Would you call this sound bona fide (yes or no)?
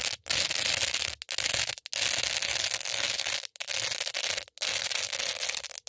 yes